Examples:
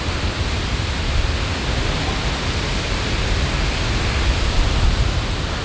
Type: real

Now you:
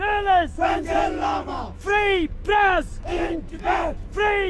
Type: fake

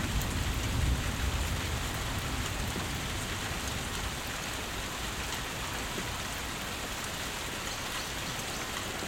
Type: real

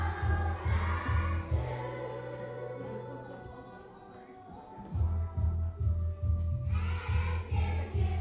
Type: real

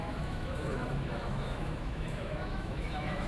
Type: fake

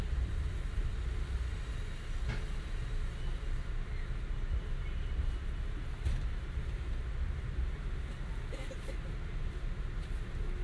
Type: real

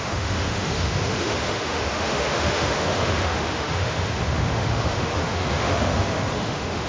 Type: fake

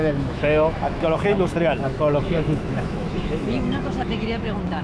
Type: fake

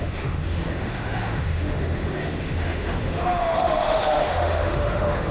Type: fake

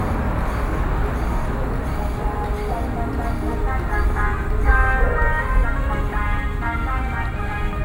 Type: real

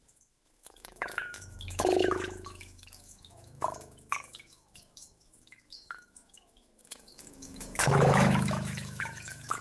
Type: fake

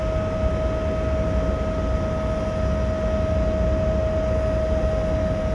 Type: real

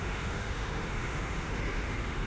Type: fake